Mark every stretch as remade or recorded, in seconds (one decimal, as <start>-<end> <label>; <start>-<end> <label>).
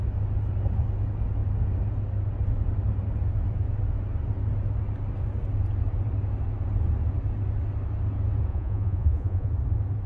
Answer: 0.0-8.5 recorded; 8.5-9.5 remade; 9.5-10.1 recorded